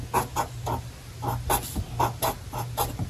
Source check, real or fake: real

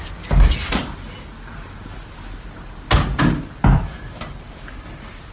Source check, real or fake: real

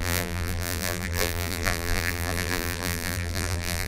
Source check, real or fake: fake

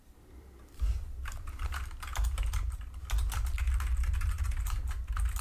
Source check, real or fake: real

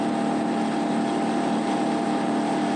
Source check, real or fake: fake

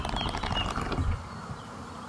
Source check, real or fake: real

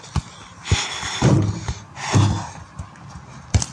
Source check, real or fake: real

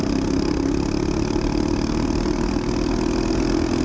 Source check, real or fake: real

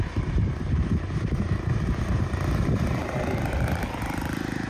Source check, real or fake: fake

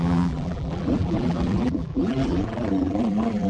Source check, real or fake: fake